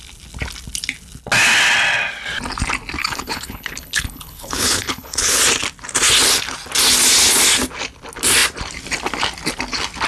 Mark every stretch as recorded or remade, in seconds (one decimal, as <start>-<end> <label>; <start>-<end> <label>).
0.0-3.0 recorded; 3.0-5.4 remade; 5.4-10.1 recorded